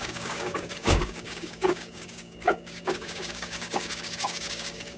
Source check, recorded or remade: remade